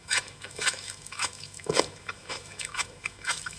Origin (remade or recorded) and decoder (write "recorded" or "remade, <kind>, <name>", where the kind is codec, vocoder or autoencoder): remade, autoencoder, DAC-VAE